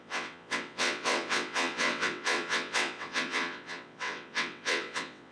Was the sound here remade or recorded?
remade